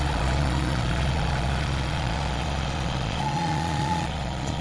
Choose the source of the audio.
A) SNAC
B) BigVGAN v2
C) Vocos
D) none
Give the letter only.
C